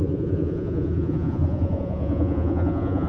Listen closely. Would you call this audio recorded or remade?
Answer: remade